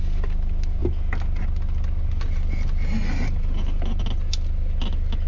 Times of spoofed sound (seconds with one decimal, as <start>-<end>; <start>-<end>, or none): none